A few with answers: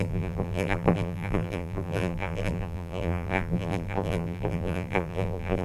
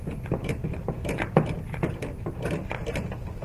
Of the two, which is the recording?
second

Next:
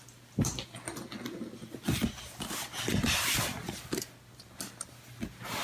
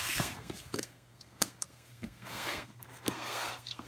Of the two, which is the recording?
first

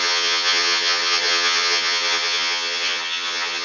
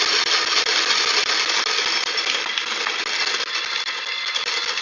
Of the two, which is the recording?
second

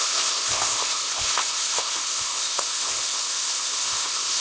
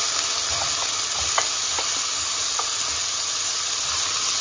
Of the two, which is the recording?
second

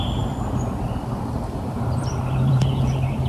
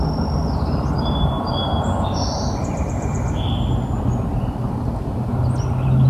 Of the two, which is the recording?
second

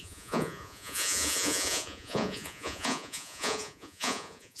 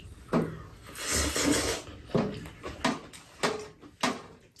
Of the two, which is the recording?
second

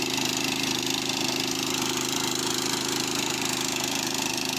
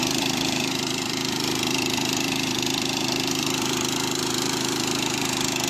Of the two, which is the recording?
first